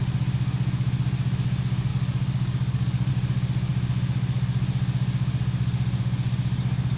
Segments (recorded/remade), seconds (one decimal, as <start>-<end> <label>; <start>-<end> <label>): 0.0-1.9 recorded; 1.9-3.1 remade; 3.1-7.0 recorded